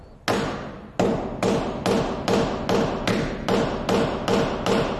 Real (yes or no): yes